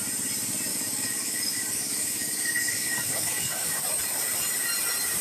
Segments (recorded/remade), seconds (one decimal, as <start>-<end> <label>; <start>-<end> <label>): 0.0-0.7 recorded; 0.7-3.8 remade; 3.8-5.2 recorded